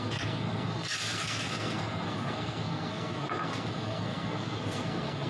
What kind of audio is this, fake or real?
fake